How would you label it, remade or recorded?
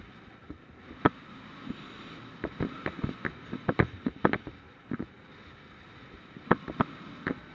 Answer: recorded